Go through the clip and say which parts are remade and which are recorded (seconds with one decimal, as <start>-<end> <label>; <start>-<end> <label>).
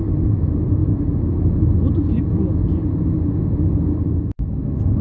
0.0-5.0 recorded